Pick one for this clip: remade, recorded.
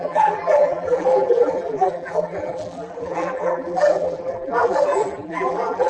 remade